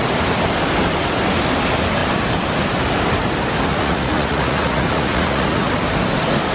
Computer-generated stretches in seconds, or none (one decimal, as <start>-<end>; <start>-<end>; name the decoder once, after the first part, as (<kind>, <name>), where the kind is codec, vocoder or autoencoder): 3.7-5.7 (vocoder, Vocos)